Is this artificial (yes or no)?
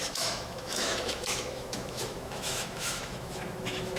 yes